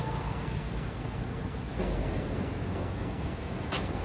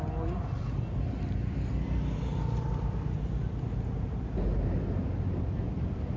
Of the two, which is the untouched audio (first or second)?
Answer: second